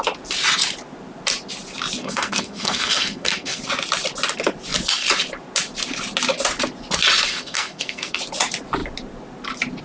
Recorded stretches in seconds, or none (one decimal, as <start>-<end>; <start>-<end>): 0.0-2.0; 3.6-7.3; 8.2-9.8